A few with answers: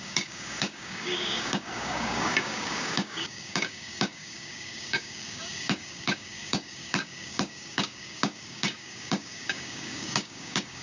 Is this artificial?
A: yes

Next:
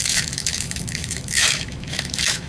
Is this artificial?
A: yes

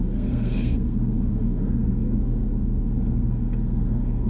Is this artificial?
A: yes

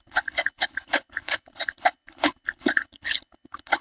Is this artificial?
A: yes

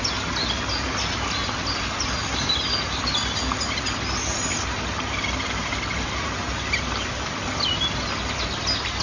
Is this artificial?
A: no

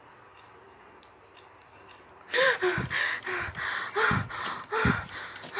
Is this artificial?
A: no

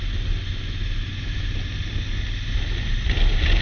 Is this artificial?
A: no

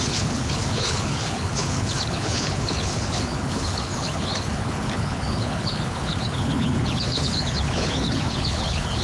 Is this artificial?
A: yes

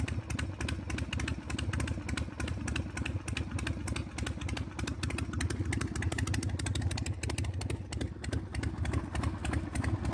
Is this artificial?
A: no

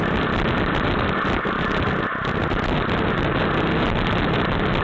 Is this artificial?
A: no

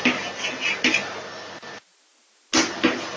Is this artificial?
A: no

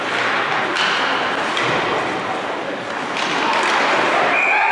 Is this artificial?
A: no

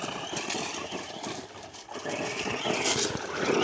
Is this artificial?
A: no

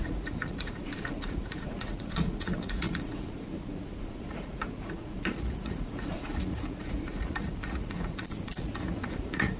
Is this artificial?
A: yes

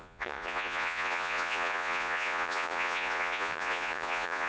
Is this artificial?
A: yes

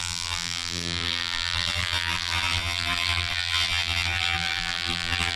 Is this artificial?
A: yes